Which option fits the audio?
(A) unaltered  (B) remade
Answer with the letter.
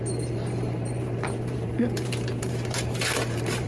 B